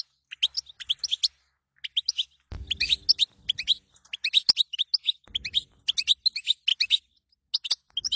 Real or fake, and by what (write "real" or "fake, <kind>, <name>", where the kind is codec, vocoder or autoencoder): real